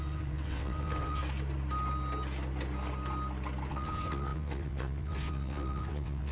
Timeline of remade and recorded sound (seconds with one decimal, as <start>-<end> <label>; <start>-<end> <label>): 0.0-1.2 remade; 1.2-3.7 recorded; 3.7-6.3 remade